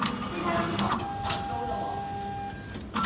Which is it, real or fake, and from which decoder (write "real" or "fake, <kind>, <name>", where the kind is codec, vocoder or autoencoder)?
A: real